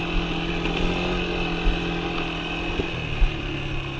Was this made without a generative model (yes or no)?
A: yes